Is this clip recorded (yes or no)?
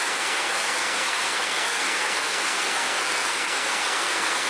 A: no